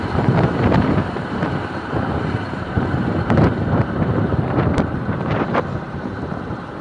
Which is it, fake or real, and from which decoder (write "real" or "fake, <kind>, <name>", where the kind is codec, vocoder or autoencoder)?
fake, vocoder, BigVGAN v2